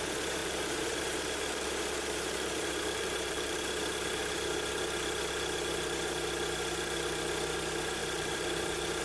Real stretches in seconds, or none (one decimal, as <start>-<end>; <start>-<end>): 0.0-0.4; 3.6-8.0